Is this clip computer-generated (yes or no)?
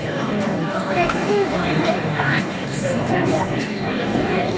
yes